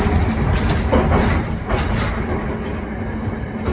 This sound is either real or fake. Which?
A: real